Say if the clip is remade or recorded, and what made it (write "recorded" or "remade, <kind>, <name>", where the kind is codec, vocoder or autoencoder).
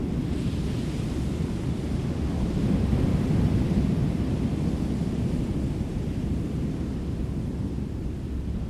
recorded